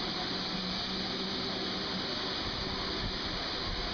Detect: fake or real real